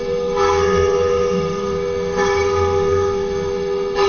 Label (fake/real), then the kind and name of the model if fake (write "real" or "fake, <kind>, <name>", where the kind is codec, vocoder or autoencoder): fake, codec, SNAC